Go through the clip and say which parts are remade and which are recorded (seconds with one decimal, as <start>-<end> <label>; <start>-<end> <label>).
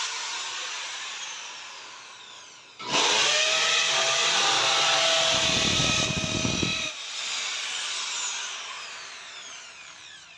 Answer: 0.0-0.5 recorded; 0.5-1.2 remade; 1.2-10.4 recorded